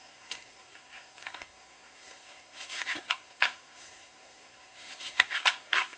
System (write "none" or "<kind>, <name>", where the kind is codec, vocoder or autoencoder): codec, SNAC